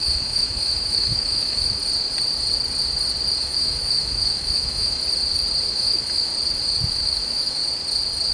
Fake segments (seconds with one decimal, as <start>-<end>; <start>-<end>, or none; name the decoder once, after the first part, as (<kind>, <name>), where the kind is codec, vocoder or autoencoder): 0.0-1.8 (autoencoder, DAC-VAE); 3.4-5.0; 5.7-6.3; 6.9-7.6